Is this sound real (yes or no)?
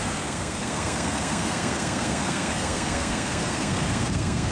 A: no